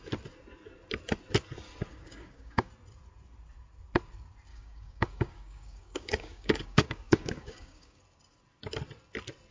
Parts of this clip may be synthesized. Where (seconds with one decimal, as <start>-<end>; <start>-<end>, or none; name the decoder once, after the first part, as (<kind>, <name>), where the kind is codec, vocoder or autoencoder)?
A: 1.9-2.7 (codec, DAC); 4.5-8.0